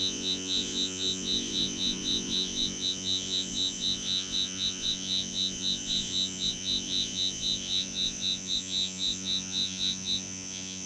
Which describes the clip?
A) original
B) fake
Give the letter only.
B